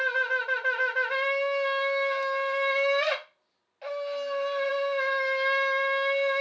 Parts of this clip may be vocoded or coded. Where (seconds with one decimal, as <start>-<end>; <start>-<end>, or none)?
none